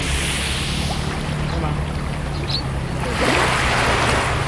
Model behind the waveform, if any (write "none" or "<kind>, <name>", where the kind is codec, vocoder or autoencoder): none